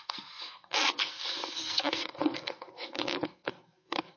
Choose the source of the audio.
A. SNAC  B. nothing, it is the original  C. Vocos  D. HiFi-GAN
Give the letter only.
A